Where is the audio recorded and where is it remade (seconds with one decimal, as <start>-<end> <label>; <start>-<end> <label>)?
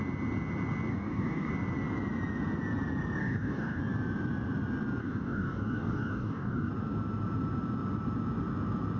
0.0-0.9 recorded; 0.9-1.5 remade; 1.5-3.2 recorded; 3.2-3.8 remade; 3.8-5.0 recorded; 5.0-6.7 remade; 6.7-9.0 recorded